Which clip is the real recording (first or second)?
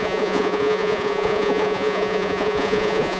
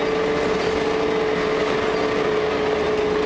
second